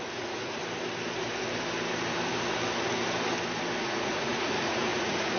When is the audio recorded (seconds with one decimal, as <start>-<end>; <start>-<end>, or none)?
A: 0.6-3.8